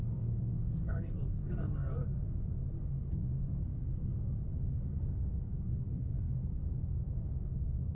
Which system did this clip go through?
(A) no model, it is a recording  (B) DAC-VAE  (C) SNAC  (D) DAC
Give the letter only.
C